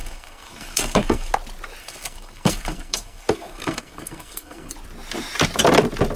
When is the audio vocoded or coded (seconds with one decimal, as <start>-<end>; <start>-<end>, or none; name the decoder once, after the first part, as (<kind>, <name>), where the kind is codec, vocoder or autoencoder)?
0.0-1.3 (codec, SNAC); 1.8-4.7